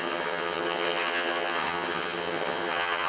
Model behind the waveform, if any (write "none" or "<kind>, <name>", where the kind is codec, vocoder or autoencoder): vocoder, HiFi-GAN